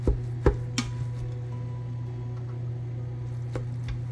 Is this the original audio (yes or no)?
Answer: yes